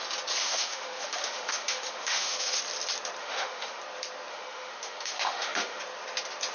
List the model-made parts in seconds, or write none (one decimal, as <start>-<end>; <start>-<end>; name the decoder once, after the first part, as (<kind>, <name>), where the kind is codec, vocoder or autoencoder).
0.4-2.6 (autoencoder, DAC-VAE); 3.2-3.8; 4.3-5.8